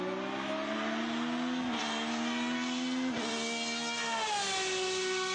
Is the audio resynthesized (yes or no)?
no